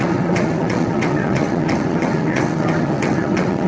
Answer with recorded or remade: remade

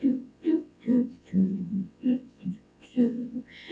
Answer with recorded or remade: remade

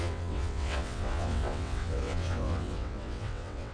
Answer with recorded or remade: remade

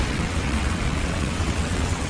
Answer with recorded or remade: remade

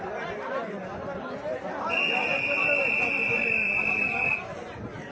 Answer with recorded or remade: recorded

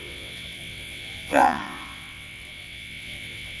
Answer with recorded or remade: remade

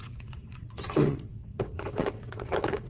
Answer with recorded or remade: remade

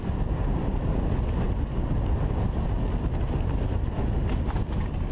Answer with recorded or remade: recorded